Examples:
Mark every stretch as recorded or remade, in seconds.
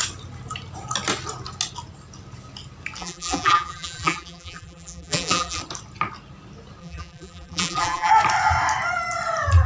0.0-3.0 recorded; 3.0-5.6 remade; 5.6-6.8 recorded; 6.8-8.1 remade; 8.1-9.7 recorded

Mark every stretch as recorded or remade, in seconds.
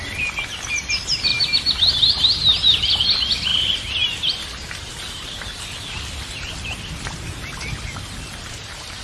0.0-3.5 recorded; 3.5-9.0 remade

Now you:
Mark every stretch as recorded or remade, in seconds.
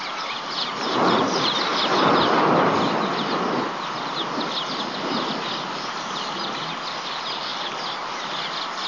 0.0-0.7 recorded; 0.7-1.5 remade; 1.5-8.9 recorded